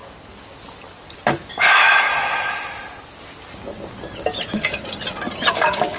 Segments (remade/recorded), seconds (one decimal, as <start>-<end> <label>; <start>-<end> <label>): 0.0-1.3 recorded; 1.3-2.1 remade; 2.1-5.5 recorded; 5.5-6.0 remade